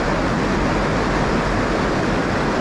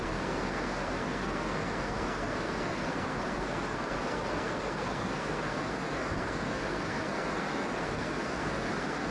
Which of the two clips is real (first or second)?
first